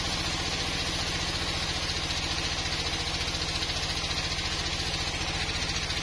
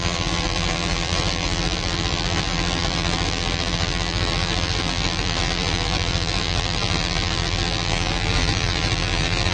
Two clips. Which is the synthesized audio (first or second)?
second